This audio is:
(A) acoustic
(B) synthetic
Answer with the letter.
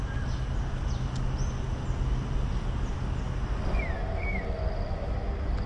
A